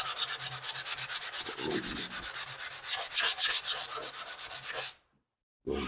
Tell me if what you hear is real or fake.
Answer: real